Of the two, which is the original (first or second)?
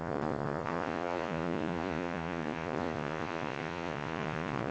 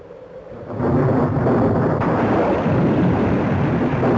second